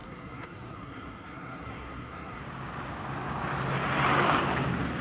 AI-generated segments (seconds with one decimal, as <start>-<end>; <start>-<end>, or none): 0.0-2.4